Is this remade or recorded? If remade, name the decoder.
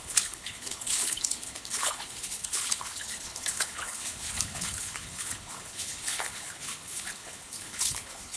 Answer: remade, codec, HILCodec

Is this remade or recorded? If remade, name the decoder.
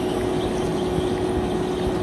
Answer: recorded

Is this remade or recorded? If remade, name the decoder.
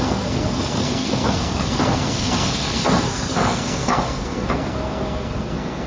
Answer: remade, codec, SNAC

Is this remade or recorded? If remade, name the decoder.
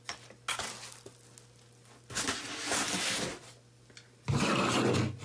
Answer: recorded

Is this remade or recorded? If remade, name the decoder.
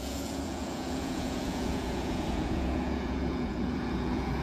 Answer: remade, vocoder, Vocos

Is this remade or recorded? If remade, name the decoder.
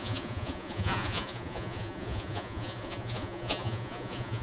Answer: remade, vocoder, Vocos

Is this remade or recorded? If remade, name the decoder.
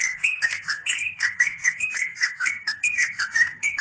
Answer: remade, codec, SNAC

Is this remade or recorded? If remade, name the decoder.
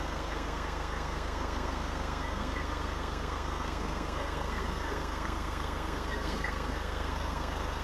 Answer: remade, codec, SNAC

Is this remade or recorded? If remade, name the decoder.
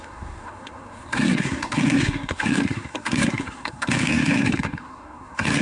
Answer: remade, codec, SNAC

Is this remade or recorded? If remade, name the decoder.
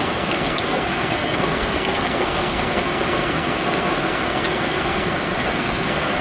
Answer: remade, codec, SNAC